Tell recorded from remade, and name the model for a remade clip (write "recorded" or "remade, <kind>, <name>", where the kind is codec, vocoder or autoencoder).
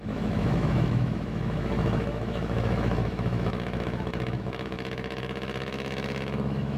remade, autoencoder, DAC-VAE